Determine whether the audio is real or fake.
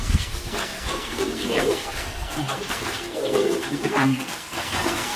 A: fake